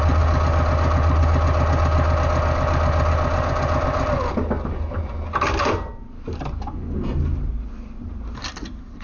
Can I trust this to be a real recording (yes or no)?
yes